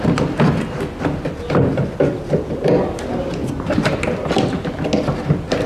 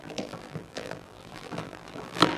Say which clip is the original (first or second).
first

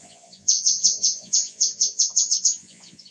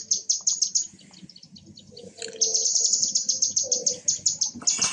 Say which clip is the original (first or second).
second